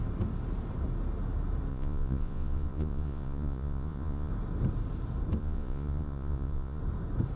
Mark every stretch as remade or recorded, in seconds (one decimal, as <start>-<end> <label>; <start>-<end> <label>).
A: 0.0-1.7 recorded; 1.7-4.3 remade; 4.3-5.4 recorded; 5.4-6.8 remade; 6.8-7.4 recorded